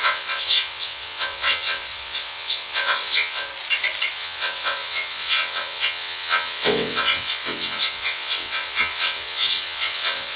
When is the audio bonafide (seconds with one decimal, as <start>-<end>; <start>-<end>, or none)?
3.5-4.1